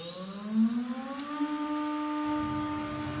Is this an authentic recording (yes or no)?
yes